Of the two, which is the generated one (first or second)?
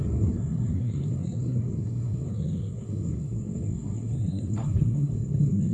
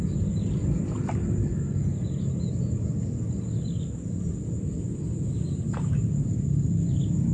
first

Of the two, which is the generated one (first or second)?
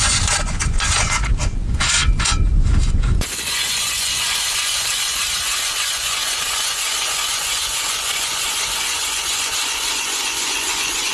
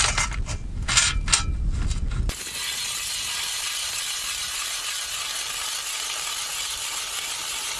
first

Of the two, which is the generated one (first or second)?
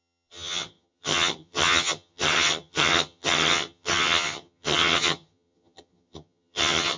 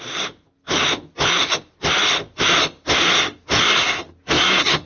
first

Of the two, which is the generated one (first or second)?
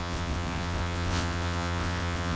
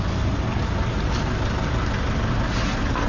first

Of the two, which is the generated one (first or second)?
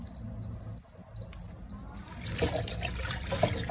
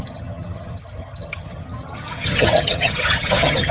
second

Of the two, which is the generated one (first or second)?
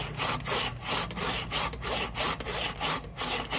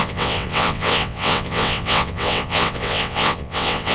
second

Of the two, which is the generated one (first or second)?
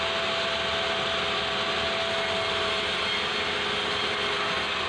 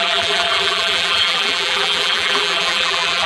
second